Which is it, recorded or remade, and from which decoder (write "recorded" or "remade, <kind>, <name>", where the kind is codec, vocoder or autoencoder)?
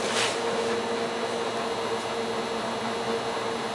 recorded